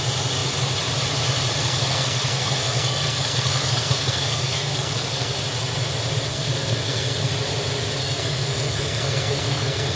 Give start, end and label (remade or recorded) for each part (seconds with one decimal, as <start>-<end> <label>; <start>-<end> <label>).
0.0-1.6 recorded; 1.6-5.4 remade; 5.4-6.3 recorded; 6.3-7.3 remade; 7.3-8.0 recorded; 8.0-10.0 remade